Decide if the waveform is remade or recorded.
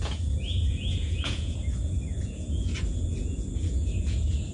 remade